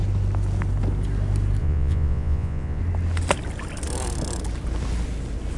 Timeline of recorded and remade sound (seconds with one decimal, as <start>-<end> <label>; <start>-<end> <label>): 0.0-1.6 recorded; 1.6-2.8 remade; 2.8-5.6 recorded